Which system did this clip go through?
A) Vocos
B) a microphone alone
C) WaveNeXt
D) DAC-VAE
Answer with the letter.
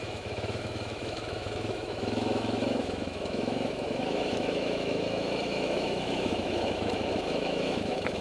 D